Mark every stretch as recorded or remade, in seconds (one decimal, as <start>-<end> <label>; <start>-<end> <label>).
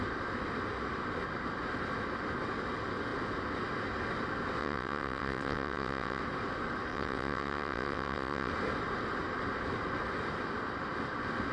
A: 0.0-4.6 recorded; 4.6-6.2 remade; 6.2-6.9 recorded; 6.9-8.5 remade; 8.5-11.5 recorded